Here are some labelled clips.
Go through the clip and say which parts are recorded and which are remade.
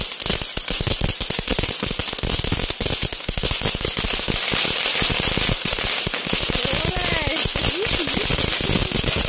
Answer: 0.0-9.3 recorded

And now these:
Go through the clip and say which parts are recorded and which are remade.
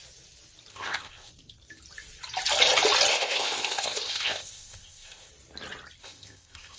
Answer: 0.0-0.7 recorded; 0.7-1.3 remade; 1.3-3.1 recorded; 3.1-5.3 remade; 5.3-6.0 recorded; 6.0-6.8 remade